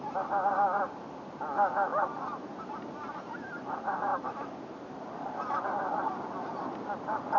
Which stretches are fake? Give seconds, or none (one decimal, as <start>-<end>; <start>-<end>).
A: 1.9-2.5; 4.1-5.6